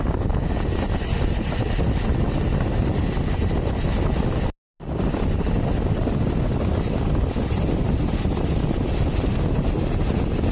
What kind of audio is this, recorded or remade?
recorded